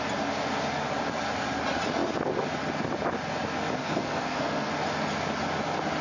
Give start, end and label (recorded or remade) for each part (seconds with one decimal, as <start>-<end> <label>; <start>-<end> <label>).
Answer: 0.0-3.8 recorded; 3.8-4.7 remade; 4.7-6.0 recorded